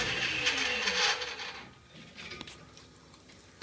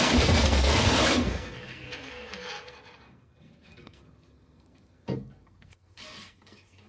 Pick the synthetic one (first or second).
second